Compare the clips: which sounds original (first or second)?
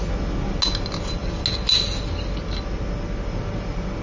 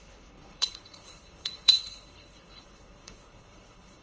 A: first